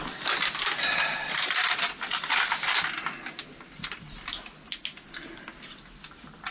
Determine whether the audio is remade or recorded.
recorded